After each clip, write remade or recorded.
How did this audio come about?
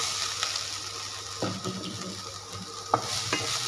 recorded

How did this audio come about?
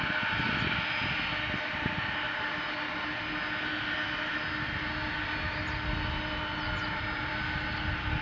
recorded